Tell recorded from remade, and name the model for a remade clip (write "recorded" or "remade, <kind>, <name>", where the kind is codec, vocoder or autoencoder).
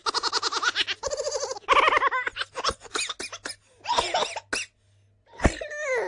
recorded